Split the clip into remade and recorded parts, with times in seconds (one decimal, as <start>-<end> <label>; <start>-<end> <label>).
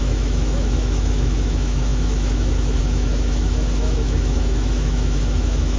0.0-5.8 remade